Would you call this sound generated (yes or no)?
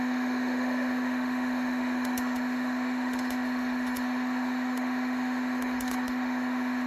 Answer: yes